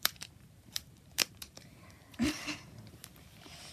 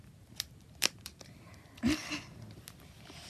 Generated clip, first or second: first